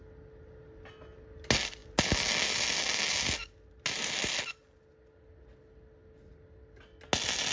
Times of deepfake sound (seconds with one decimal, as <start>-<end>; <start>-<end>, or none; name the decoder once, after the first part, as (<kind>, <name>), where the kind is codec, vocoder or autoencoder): none